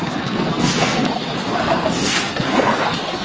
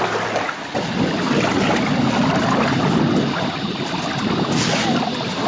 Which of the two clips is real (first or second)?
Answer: second